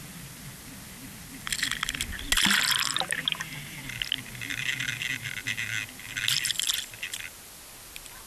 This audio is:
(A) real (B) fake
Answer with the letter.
A